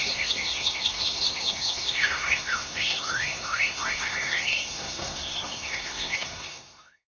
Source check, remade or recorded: remade